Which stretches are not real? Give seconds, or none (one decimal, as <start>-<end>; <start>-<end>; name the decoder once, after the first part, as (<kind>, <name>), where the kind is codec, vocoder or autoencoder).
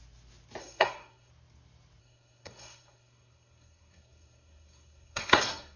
0.6-1.3 (codec, SNAC); 2.0-5.8